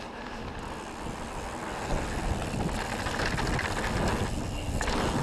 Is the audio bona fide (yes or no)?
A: yes